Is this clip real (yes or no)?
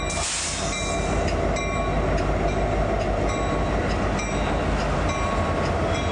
yes